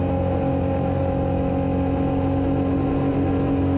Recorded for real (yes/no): yes